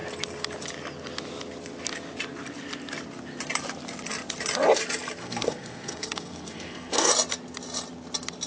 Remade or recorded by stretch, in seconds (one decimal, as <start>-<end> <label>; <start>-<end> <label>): 0.0-5.2 recorded; 5.2-7.1 remade; 7.1-8.5 recorded